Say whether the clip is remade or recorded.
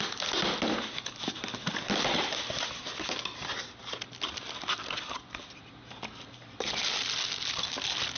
recorded